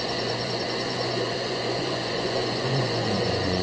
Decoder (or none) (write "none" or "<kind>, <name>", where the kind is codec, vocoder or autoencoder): vocoder, Vocos